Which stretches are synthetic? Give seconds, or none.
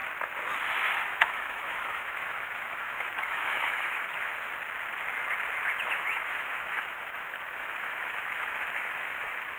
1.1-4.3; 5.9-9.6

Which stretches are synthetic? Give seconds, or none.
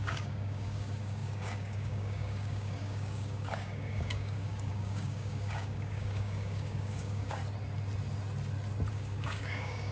0.0-7.4; 8.9-9.9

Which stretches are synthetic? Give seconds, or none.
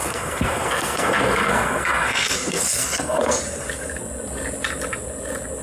0.0-3.4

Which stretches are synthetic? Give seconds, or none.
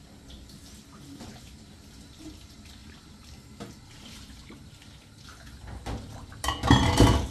none